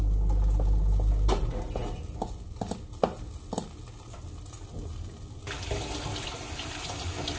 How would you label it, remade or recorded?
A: recorded